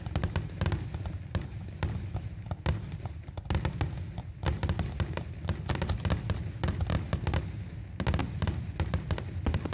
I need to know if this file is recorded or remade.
recorded